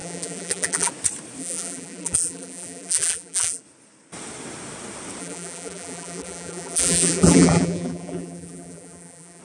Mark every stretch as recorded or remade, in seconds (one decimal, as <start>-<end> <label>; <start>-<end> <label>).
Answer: 0.0-0.9 remade; 0.9-1.4 recorded; 1.4-3.6 remade; 3.6-5.2 recorded; 5.2-9.4 remade